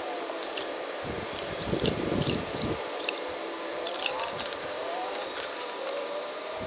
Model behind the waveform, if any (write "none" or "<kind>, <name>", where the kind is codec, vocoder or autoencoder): vocoder, BigVGAN v2